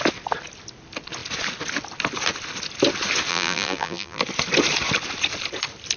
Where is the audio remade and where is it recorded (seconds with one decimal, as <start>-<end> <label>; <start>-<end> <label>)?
0.0-3.3 recorded; 3.3-4.2 remade; 4.2-6.0 recorded